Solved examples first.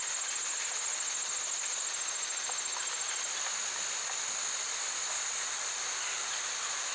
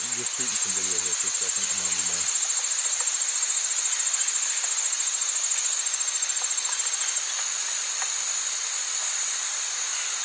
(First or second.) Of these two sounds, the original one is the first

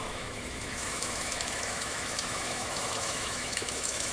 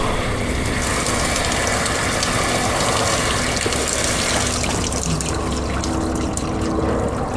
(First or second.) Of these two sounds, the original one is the second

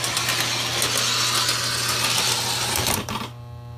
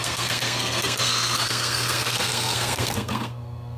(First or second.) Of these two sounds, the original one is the first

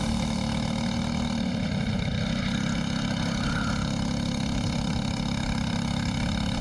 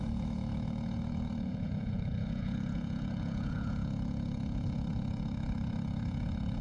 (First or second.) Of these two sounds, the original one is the first